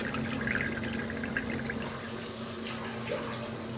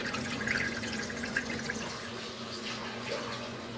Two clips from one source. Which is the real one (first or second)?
first